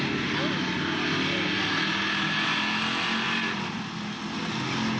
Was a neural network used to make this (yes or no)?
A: no